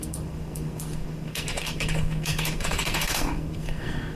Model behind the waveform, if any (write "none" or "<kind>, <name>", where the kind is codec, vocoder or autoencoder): codec, SNAC